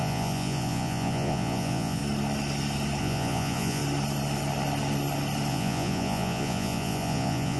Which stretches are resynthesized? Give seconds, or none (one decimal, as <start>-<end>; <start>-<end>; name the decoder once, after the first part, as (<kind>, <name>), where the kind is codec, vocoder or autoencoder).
0.0-2.0 (vocoder, Vocos); 3.0-3.8; 5.5-7.6